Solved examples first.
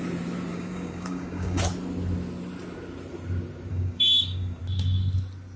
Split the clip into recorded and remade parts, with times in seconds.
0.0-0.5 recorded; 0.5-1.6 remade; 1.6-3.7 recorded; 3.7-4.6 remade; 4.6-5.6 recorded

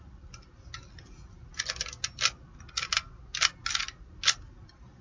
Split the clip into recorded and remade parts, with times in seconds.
0.0-5.0 recorded

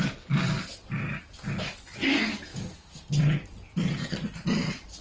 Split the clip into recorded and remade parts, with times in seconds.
0.0-5.0 recorded

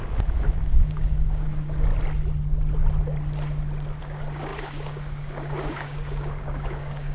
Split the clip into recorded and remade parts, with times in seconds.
0.0-1.9 remade; 1.9-4.0 recorded; 4.0-7.1 remade

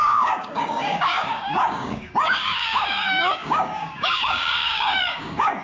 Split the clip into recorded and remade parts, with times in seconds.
0.0-5.6 remade

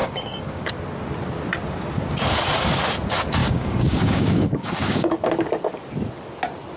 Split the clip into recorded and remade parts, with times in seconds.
0.0-0.7 remade; 0.7-3.4 recorded; 3.4-5.2 remade; 5.2-6.8 recorded

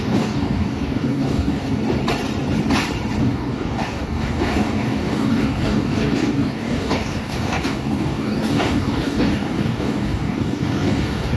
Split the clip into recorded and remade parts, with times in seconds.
0.0-1.8 remade; 1.8-3.2 recorded; 3.2-11.4 remade